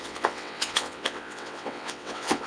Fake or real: fake